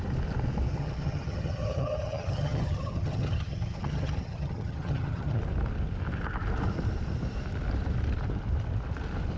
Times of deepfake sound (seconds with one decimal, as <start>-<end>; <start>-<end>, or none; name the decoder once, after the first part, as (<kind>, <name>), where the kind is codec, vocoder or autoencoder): 0.7-5.4 (vocoder, HiFi-GAN)